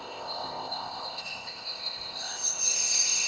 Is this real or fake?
fake